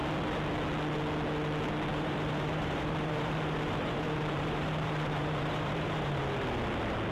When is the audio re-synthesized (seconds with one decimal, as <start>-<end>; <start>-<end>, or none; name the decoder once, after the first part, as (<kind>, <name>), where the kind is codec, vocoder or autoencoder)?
1.9-6.2 (vocoder, BigVGAN v2)